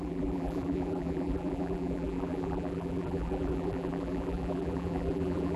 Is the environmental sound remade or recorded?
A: remade